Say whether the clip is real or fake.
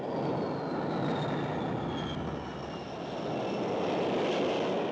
real